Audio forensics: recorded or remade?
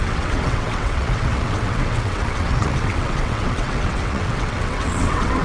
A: remade